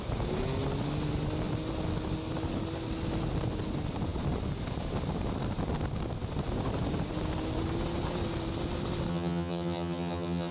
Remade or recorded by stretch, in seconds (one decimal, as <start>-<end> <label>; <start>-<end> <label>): 0.0-9.1 recorded; 9.1-10.5 remade